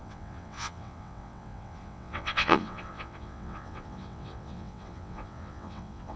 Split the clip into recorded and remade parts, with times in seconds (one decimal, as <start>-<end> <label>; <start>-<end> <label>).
0.0-6.2 remade